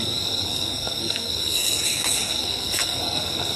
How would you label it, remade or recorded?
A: remade